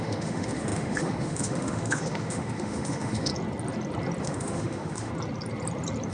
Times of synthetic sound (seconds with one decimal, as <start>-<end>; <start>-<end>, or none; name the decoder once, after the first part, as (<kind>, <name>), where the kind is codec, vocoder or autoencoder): 0.0-3.3 (autoencoder, DAC-VAE); 4.2-5.1